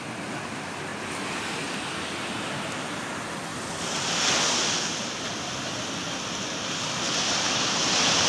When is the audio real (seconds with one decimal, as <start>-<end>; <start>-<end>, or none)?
0.0-8.3

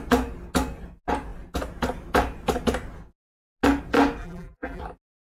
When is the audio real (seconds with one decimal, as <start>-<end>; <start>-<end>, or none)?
0.0-4.2; 4.8-5.2

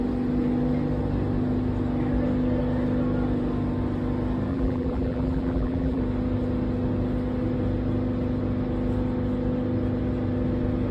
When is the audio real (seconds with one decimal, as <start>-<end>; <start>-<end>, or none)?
0.0-4.5; 6.0-10.9